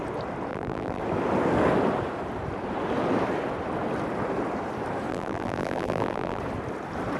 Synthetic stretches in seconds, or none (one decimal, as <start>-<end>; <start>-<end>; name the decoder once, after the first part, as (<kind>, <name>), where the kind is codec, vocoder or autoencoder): 0.5-1.0 (vocoder, BigVGAN v2); 5.1-6.4